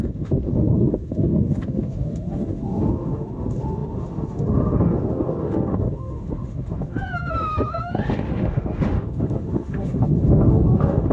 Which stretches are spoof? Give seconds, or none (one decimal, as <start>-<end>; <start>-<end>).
0.0-11.1